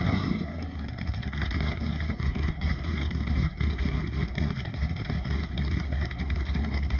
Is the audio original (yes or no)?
no